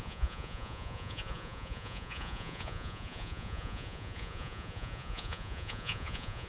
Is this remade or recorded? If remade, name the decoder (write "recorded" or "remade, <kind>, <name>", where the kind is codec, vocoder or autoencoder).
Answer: remade, vocoder, Vocos